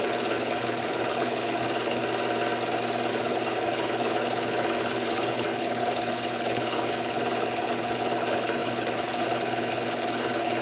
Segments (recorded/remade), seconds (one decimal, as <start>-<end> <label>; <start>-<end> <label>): 0.0-2.0 remade; 2.0-3.1 recorded; 3.1-10.6 remade